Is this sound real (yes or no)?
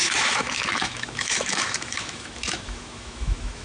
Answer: no